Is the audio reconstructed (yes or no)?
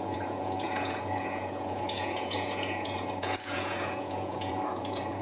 yes